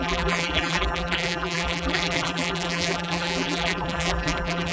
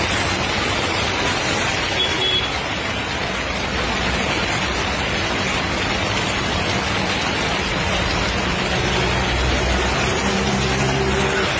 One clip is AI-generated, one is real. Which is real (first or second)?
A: second